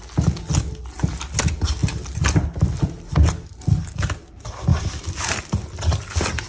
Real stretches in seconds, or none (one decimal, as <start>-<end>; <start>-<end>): 0.0-6.5